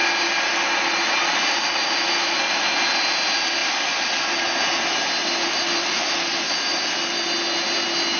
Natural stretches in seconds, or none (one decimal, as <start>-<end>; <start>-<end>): 0.0-8.2